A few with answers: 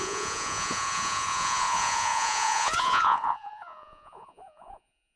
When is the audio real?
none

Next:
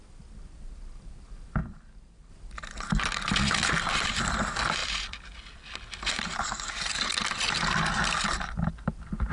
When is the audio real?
0.0-9.3

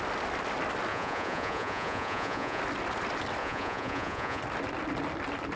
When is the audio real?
0.0-0.9; 2.6-3.4; 4.4-5.6